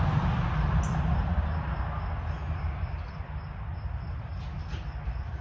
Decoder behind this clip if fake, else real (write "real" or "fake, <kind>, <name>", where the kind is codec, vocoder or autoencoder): real